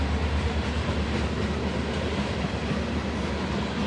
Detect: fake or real real